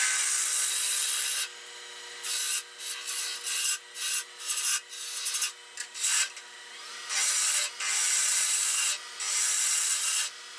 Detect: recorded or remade recorded